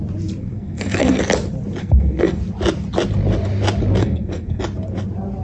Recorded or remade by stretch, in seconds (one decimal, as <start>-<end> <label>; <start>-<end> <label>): 0.0-0.4 recorded; 0.4-1.2 remade; 1.2-1.8 recorded; 1.8-2.4 remade; 2.4-4.0 recorded; 4.0-4.6 remade; 4.6-5.4 recorded